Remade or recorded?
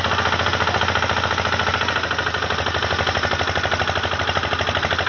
recorded